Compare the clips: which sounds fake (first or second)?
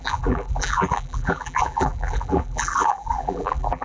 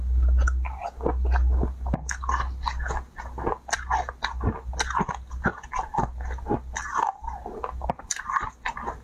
first